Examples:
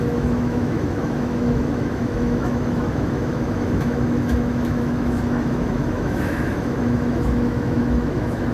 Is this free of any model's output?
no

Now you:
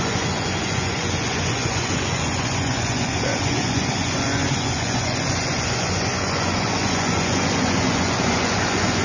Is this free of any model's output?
no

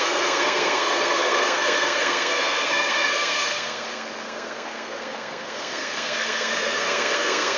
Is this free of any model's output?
no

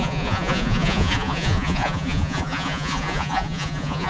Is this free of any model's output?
no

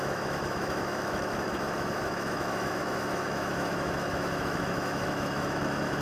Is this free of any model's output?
no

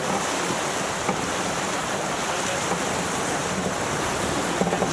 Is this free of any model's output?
yes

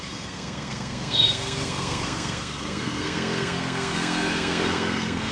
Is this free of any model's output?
no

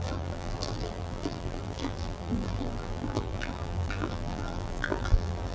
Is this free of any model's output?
no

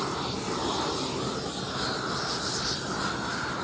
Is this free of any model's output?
yes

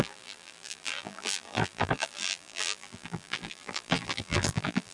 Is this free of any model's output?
no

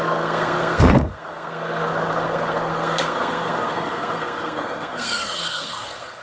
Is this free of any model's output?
no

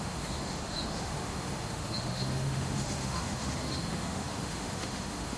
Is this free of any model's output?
no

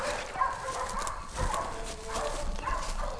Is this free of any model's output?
yes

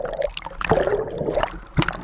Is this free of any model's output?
yes